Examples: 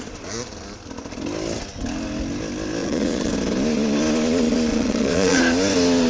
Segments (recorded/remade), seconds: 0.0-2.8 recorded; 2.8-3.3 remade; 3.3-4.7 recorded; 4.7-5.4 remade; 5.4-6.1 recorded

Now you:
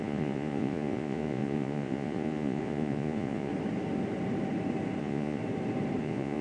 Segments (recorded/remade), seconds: 0.0-3.5 remade; 3.5-5.0 recorded; 5.0-5.4 remade; 5.4-6.0 recorded; 6.0-6.4 remade

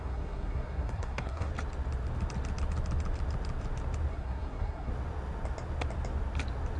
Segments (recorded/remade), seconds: 0.0-1.5 remade; 1.5-4.1 recorded; 4.1-4.9 remade; 4.9-6.8 recorded

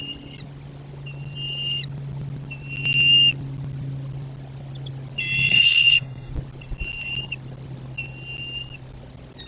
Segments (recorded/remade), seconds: 0.0-5.5 recorded; 5.5-6.3 remade; 6.3-9.5 recorded

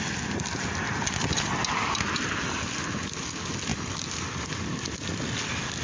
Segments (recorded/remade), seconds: 0.0-5.8 recorded